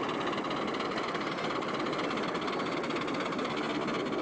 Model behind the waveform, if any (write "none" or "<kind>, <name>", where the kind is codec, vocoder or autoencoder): none